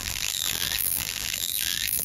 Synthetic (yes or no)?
yes